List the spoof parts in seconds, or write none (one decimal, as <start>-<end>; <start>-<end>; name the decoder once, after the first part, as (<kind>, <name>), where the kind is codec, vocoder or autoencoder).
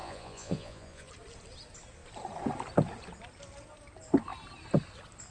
0.0-1.1 (vocoder, Vocos)